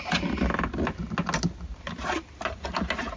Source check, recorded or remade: recorded